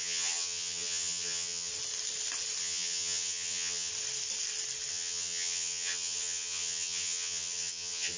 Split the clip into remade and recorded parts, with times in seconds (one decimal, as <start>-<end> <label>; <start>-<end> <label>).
0.0-1.7 remade; 1.7-2.6 recorded; 2.6-3.9 remade; 3.9-4.9 recorded; 4.9-8.2 remade